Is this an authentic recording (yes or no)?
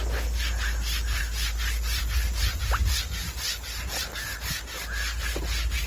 yes